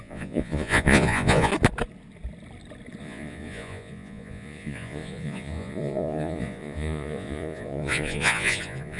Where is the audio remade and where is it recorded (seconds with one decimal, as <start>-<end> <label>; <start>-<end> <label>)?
0.0-1.5 remade; 1.5-3.0 recorded; 3.0-9.0 remade